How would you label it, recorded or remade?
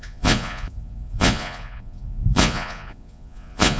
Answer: remade